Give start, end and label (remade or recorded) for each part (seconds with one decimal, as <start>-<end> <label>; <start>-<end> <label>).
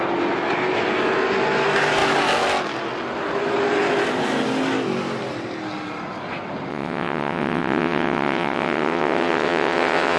0.0-6.7 recorded; 6.7-10.2 remade